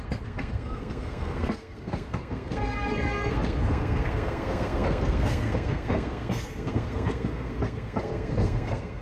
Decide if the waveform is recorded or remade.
remade